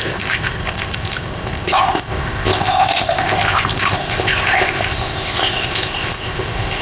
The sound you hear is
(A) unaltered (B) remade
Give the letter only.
B